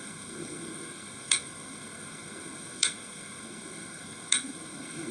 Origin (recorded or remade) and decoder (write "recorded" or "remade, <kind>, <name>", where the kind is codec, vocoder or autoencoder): remade, codec, SNAC